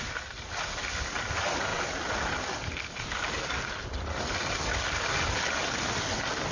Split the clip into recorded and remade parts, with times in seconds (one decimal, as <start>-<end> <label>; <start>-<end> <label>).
0.0-6.5 recorded